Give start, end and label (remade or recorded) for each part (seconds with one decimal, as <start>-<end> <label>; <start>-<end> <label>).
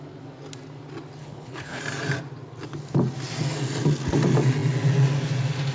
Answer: 0.0-1.2 recorded; 1.2-1.8 remade; 1.8-5.7 recorded